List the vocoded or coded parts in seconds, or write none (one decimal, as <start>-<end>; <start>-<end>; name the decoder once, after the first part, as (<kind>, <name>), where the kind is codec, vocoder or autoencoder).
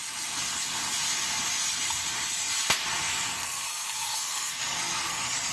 3.0-5.5 (codec, SNAC)